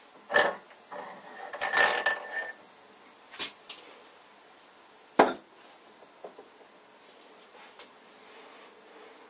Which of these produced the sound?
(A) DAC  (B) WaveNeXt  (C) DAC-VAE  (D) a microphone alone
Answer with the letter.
D